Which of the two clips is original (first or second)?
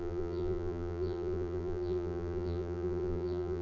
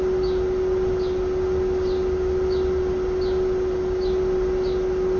second